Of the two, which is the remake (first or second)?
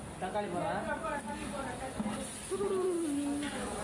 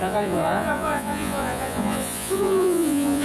second